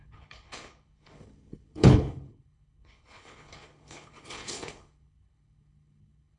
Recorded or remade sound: remade